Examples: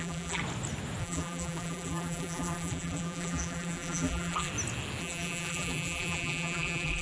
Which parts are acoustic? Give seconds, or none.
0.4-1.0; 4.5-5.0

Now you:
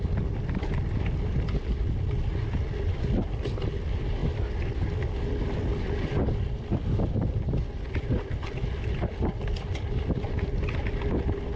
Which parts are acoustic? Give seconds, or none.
0.0-11.6

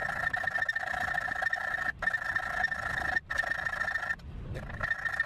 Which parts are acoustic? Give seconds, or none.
0.0-5.3

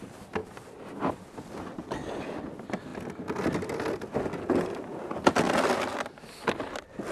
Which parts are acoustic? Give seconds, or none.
0.0-7.1

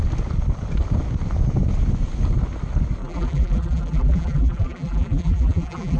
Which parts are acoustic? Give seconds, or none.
0.0-3.0

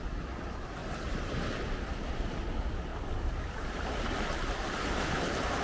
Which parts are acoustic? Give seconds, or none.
0.0-0.8; 2.1-2.9

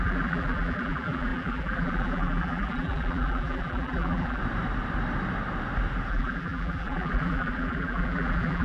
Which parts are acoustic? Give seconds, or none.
4.4-6.1